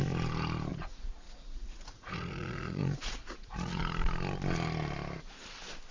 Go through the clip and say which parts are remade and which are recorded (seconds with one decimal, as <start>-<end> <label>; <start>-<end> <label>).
0.0-0.7 recorded; 0.7-3.8 remade; 3.8-5.9 recorded